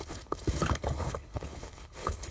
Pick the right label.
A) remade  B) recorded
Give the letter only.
A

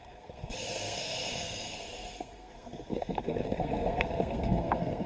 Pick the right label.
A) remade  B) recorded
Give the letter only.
A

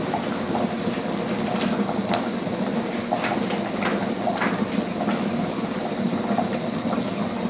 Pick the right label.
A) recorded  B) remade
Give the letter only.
A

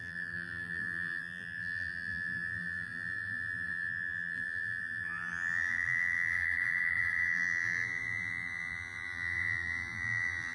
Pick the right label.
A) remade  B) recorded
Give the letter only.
A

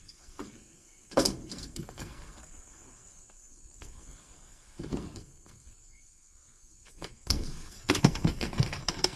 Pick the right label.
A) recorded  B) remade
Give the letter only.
B